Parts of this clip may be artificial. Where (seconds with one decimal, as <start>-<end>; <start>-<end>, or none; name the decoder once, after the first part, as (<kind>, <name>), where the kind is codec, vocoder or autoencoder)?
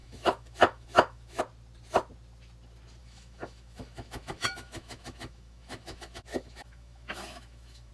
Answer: 0.0-1.4 (autoencoder, DAC-VAE); 3.0-7.9